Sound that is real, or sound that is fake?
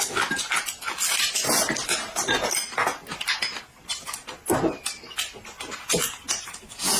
real